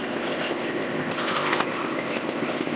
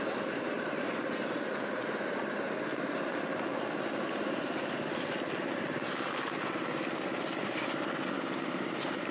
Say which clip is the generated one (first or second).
first